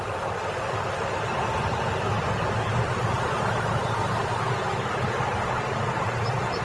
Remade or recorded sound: recorded